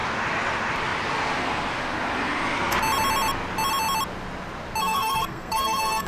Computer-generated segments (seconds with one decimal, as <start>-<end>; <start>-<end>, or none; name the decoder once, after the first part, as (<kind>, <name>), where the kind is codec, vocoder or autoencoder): 4.8-6.1 (codec, SNAC)